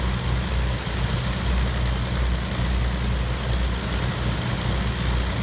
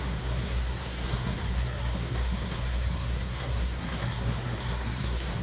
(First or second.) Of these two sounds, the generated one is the second